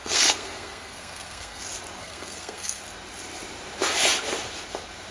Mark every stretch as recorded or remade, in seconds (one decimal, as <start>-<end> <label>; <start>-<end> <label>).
0.0-1.6 remade; 1.6-2.0 recorded; 2.0-2.8 remade; 2.8-5.1 recorded